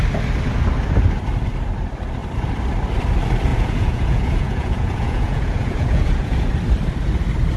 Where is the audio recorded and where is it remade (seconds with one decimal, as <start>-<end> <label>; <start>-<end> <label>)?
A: 0.0-3.5 recorded; 3.5-6.5 remade; 6.5-7.6 recorded